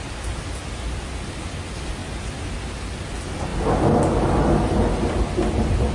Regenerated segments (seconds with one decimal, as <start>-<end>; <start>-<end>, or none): none